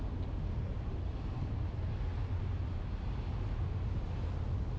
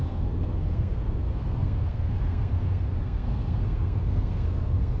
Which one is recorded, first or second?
first